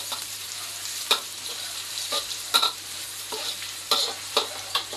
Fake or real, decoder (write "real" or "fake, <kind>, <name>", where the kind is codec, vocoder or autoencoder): fake, vocoder, BigVGAN v2